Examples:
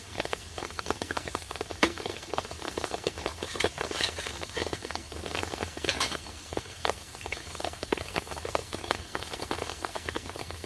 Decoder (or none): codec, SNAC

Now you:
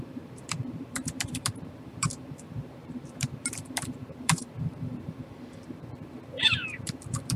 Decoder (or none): vocoder, BigVGAN v2